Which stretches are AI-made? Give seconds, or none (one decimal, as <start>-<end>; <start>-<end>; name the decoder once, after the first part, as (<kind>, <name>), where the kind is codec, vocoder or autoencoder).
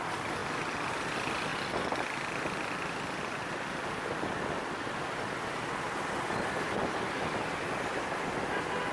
none